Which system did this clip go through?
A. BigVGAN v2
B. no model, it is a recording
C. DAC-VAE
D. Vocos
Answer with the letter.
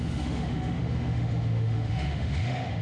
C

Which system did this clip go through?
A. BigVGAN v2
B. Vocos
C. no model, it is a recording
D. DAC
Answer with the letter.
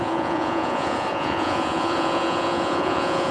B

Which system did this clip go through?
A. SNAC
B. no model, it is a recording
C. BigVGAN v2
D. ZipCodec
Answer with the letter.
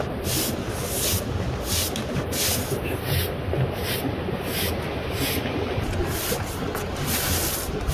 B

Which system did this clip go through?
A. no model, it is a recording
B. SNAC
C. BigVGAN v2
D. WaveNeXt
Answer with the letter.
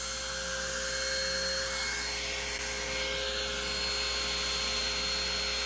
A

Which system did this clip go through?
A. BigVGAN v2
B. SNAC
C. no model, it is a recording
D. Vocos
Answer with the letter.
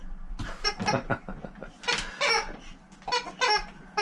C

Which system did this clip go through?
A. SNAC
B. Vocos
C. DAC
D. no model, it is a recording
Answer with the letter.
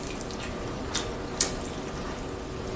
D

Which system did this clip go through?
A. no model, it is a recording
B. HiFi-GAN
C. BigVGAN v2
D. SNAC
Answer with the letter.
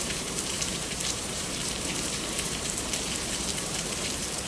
C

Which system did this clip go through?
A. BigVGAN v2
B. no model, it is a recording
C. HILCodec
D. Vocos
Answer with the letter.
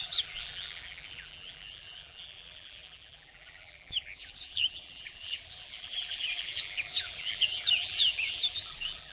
A